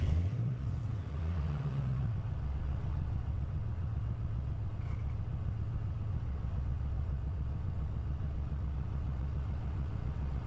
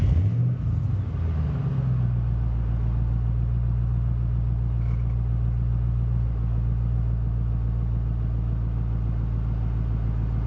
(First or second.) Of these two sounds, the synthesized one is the first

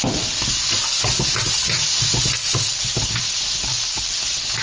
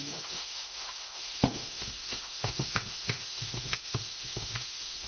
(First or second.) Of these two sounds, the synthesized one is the second